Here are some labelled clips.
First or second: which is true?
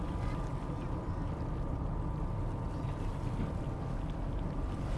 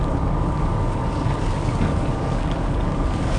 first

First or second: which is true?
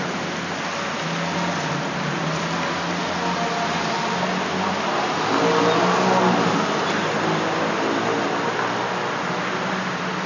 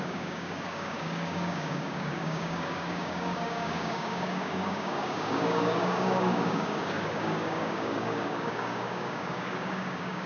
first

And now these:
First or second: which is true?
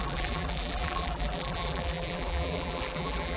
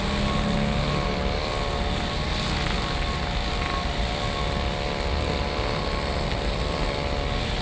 second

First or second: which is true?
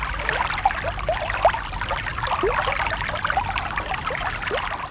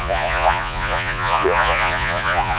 first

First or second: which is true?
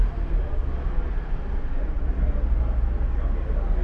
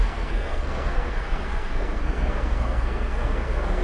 first